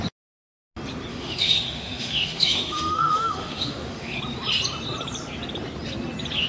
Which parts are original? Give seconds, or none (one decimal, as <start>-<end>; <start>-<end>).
0.0-1.1; 4.2-6.5